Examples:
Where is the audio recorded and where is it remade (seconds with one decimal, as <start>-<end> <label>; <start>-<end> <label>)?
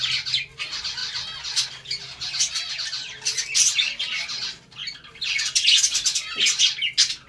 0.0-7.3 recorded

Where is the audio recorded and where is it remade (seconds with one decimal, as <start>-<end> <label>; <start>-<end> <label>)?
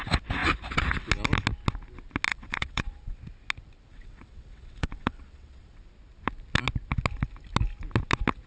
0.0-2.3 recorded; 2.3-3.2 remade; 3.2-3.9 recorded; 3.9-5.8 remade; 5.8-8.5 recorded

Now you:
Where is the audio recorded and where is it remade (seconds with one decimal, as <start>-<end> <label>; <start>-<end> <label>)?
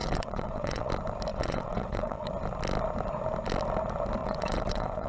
0.0-0.9 remade; 0.9-1.3 recorded; 1.3-2.3 remade; 2.3-4.2 recorded; 4.2-5.1 remade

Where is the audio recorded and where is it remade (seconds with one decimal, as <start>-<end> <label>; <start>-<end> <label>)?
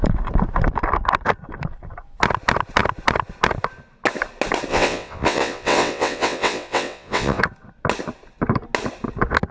0.0-4.7 recorded; 4.7-7.4 remade; 7.4-9.5 recorded